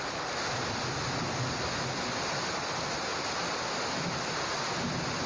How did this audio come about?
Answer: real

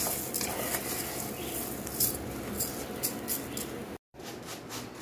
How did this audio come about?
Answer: real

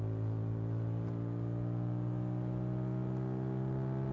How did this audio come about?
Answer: real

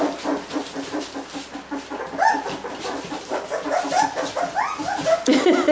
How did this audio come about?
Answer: real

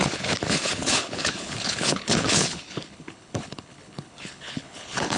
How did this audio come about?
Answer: fake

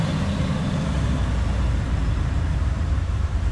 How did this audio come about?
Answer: fake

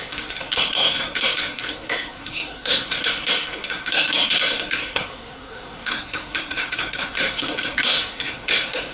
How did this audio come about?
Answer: fake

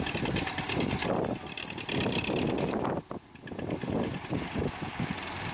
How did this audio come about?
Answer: real